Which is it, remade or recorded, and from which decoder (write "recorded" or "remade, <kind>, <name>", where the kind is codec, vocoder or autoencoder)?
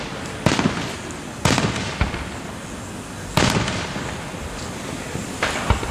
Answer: recorded